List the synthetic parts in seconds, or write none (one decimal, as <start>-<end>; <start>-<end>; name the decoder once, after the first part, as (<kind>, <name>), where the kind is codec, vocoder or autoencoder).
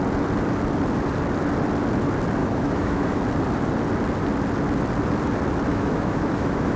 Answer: 2.4-3.2 (autoencoder, DAC-VAE); 5.7-6.8